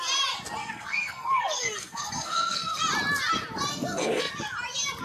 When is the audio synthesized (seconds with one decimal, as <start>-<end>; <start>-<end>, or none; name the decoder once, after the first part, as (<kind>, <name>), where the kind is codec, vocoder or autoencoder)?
0.6-2.8 (codec, SNAC); 3.7-4.3